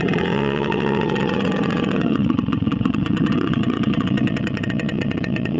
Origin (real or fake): fake